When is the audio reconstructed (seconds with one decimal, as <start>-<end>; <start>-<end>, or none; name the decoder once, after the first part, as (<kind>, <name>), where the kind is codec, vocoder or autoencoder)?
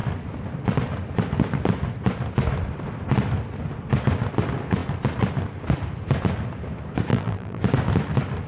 7.1-7.6 (vocoder, BigVGAN v2)